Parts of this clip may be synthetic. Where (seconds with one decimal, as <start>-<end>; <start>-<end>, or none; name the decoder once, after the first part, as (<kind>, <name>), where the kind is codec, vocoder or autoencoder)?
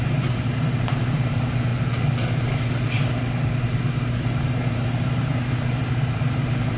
0.0-1.7 (vocoder, BigVGAN v2); 4.4-6.8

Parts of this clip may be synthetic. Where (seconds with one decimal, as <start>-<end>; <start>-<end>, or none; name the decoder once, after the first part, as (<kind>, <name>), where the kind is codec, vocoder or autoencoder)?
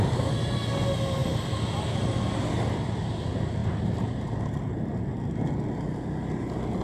1.2-2.2 (vocoder, BigVGAN v2)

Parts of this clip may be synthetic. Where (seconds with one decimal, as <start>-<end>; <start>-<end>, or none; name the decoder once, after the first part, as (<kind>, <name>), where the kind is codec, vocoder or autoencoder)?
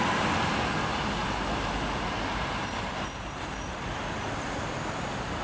1.2-3.8 (vocoder, BigVGAN v2)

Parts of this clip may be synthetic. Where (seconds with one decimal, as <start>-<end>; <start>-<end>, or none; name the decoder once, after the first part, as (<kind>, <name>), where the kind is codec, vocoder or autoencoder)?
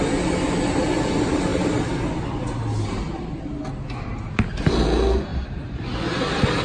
5.3-6.6 (vocoder, BigVGAN v2)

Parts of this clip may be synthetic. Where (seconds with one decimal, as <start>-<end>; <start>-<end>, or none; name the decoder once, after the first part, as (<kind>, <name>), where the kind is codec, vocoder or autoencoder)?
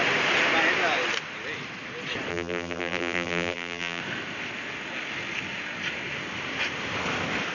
2.3-4.0 (vocoder, BigVGAN v2)